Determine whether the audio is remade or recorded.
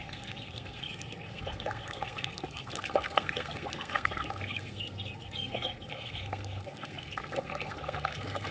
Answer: remade